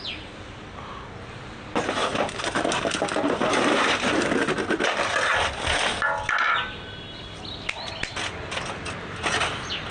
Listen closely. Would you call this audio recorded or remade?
recorded